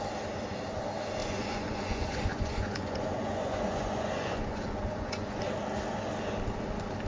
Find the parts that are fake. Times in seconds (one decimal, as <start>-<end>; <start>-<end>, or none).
1.2-5.4

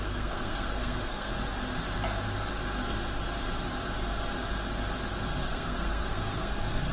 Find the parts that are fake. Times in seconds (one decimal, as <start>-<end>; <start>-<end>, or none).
0.0-1.3; 5.4-6.9

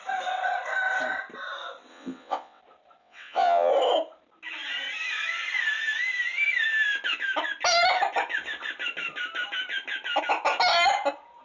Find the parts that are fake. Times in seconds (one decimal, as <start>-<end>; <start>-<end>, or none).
1.9-2.6; 3.0-3.7

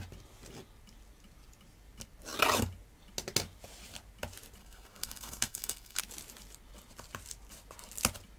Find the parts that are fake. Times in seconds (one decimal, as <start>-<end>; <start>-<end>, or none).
4.6-6.0

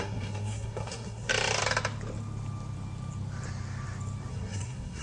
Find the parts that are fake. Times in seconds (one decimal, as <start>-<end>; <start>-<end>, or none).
0.0-1.3; 4.3-5.0

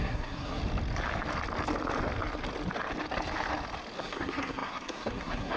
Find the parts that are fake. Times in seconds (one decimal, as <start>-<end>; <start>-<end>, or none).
0.0-0.6; 4.0-5.6

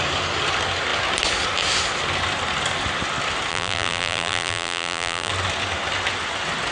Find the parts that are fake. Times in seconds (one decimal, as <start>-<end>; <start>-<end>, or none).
3.5-5.3